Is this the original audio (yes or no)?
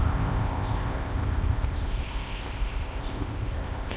no